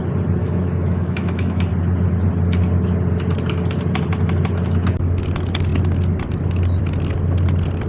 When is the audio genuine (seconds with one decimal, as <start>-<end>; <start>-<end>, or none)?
0.0-0.4; 1.7-7.9